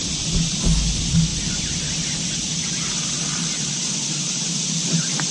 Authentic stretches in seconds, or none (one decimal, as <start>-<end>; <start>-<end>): 0.6-5.3